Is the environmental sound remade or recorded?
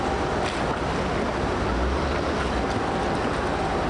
recorded